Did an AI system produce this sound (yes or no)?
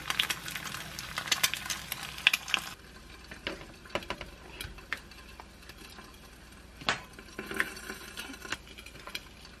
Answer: no